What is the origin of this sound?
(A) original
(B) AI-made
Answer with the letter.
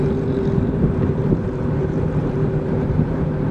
B